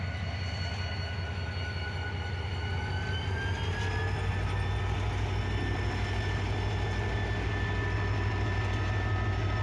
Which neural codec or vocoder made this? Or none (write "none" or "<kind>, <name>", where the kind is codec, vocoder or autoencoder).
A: none